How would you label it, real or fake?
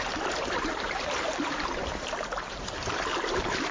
fake